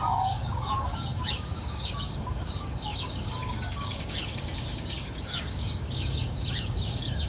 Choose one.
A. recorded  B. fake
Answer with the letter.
B